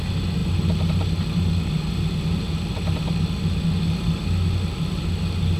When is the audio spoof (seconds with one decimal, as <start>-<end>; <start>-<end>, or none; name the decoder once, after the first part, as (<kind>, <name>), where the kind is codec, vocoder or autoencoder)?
none